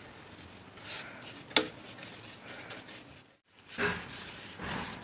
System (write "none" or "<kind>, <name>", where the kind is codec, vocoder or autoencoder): none